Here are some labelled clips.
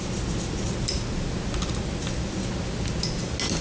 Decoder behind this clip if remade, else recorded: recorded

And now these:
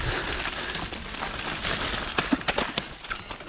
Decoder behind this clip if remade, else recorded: recorded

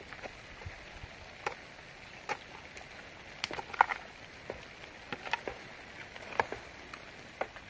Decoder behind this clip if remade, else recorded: recorded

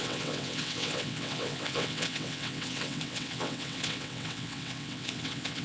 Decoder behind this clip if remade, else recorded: remade, vocoder, WaveNeXt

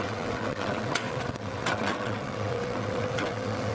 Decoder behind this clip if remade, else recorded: remade, vocoder, WaveNeXt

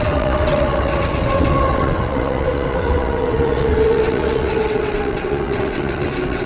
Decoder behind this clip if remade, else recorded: remade, vocoder, WaveNeXt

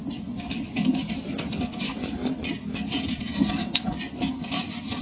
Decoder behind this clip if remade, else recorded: recorded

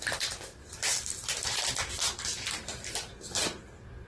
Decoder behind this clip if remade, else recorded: recorded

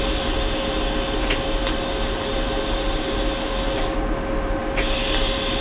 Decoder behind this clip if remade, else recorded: recorded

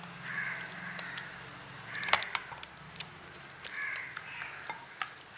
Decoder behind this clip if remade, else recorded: recorded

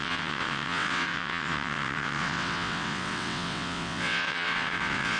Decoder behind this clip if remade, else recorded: remade, vocoder, WaveNeXt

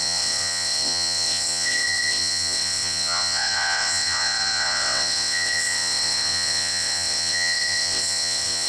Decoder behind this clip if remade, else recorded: remade, vocoder, WaveNeXt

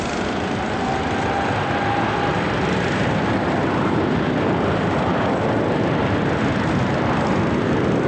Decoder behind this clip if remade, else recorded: recorded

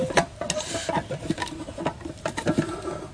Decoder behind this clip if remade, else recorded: recorded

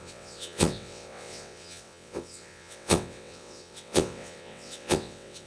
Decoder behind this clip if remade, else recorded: remade, vocoder, WaveNeXt